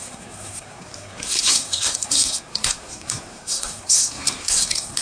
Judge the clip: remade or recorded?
remade